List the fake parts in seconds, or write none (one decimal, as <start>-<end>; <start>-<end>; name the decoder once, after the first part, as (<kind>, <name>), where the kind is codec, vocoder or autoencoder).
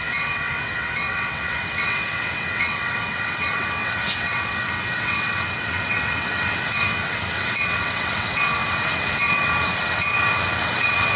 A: 0.0-11.2 (vocoder, WaveNeXt)